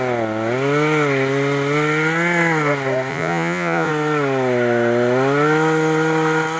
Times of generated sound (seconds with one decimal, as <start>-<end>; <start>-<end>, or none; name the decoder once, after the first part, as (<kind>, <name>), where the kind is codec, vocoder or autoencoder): 3.1-3.9 (vocoder, Vocos)